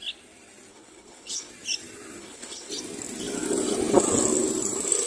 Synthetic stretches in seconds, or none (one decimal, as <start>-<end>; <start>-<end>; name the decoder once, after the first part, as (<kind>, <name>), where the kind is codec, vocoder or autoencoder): 0.7-1.5 (codec, HILCodec); 2.2-2.7

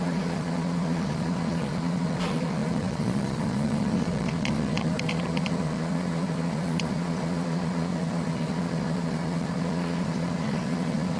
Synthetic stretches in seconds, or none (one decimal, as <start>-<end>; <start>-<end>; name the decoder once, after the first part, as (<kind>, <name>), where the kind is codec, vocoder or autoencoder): 0.0-11.2 (vocoder, Vocos)

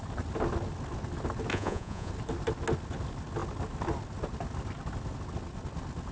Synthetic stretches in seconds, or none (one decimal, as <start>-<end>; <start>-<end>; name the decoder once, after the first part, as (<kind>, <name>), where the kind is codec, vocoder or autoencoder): 1.5-2.1 (vocoder, Vocos)